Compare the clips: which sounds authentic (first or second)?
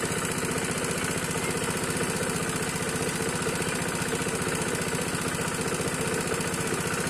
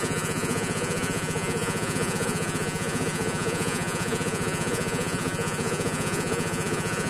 first